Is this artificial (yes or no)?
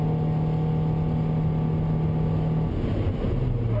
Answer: no